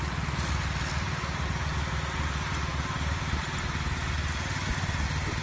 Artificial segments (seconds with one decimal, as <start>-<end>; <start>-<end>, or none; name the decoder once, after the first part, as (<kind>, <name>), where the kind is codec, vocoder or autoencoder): 2.7-3.4 (vocoder, BigVGAN v2)

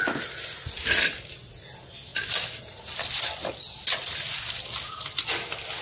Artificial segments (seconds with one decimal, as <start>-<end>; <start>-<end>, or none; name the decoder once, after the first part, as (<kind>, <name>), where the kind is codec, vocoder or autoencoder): none

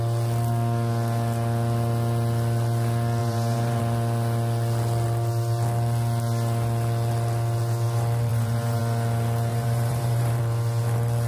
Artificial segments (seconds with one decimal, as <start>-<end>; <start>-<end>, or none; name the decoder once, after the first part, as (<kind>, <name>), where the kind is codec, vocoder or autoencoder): 3.2-3.8 (vocoder, BigVGAN v2); 8.3-8.8; 9.5-10.4

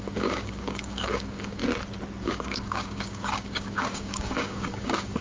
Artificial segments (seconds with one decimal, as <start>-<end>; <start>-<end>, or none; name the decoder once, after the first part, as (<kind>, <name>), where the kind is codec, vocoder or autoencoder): 0.0-1.6 (codec, DAC); 2.2-5.2

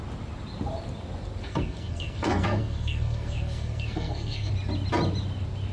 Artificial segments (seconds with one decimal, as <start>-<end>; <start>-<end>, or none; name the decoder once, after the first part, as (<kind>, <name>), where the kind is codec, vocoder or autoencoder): 1.4-4.5 (codec, SNAC)

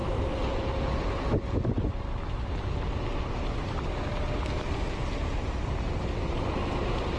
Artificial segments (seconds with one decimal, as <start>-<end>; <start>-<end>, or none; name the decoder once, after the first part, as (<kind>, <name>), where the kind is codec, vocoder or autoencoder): none

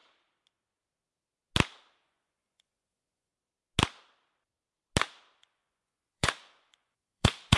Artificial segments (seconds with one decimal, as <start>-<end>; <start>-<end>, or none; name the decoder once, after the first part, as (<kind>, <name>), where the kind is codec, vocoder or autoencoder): 2.0-3.3 (vocoder, Vocos); 5.4-7.6

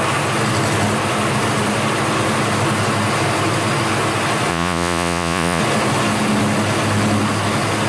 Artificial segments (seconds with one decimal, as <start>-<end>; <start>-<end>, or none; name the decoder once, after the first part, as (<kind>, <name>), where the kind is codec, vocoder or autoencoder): 4.5-5.6 (vocoder, Vocos)